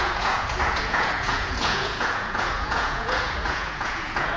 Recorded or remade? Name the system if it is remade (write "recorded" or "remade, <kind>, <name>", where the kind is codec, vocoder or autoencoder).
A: remade, vocoder, Vocos